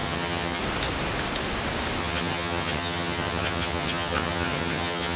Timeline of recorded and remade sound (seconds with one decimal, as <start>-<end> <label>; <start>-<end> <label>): 0.0-0.6 remade; 0.6-2.0 recorded; 2.0-5.2 remade